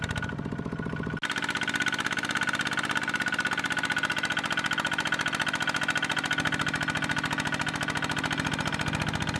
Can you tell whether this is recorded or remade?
recorded